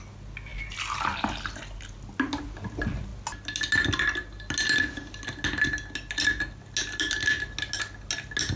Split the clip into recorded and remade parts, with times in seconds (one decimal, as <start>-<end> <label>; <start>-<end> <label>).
0.0-8.6 recorded